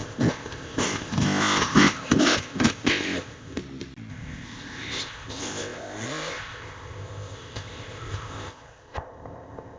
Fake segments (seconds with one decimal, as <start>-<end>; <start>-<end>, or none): 0.0-3.6; 4.1-9.8